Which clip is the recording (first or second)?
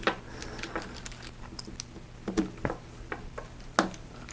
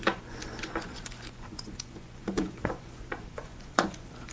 first